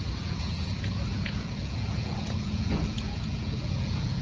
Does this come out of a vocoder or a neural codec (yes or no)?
yes